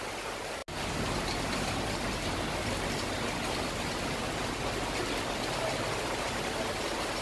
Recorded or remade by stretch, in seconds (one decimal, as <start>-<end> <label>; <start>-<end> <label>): 0.0-7.2 recorded